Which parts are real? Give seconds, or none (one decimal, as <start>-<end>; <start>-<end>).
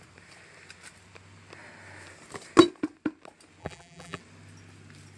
0.0-3.6; 4.2-5.2